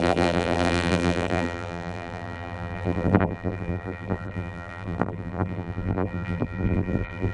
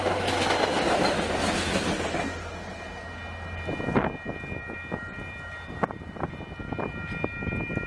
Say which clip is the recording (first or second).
second